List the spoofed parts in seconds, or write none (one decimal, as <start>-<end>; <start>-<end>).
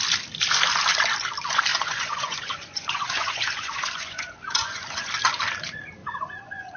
1.7-5.1; 6.0-6.8